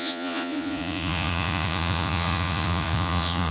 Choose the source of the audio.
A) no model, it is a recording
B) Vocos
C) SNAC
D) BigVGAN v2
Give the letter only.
B